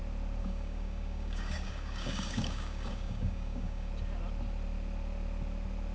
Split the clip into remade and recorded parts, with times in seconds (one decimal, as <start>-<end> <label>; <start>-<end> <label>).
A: 0.0-0.4 recorded; 0.4-3.9 remade; 3.9-5.9 recorded

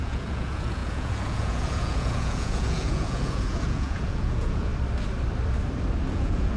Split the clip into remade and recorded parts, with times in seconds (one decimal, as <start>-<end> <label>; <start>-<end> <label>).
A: 0.0-4.7 remade; 4.7-6.1 recorded; 6.1-6.6 remade

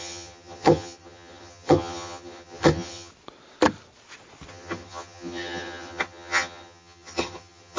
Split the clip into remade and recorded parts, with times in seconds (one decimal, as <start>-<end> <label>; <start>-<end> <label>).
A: 0.0-3.1 remade; 3.1-4.5 recorded; 4.5-7.8 remade

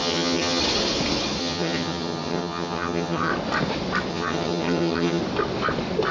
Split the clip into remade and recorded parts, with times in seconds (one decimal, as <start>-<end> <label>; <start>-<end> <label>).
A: 0.0-0.6 remade; 0.6-1.4 recorded; 1.4-3.3 remade; 3.3-4.1 recorded; 4.1-5.2 remade; 5.2-6.1 recorded